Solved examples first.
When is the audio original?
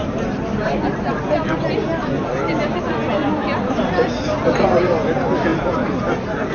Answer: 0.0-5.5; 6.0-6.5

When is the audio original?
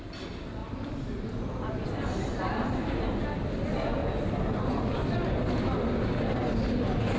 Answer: 0.0-0.6; 3.1-4.0; 5.1-7.2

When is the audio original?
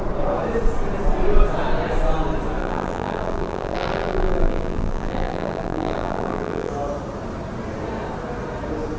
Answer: 0.0-2.6; 6.7-9.0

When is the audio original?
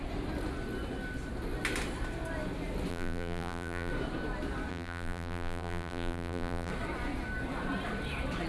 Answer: 0.0-2.9; 3.9-4.7; 6.7-8.5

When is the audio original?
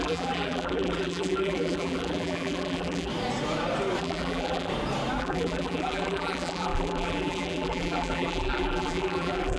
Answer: 3.1-4.0; 4.7-5.2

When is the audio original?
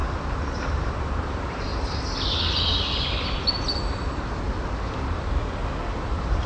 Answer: 1.7-5.1; 5.6-6.1